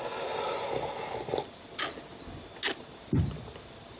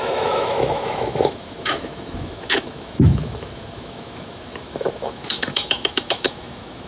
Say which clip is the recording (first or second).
first